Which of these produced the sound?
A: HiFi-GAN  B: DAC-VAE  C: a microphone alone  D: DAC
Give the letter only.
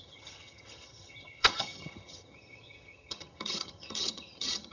A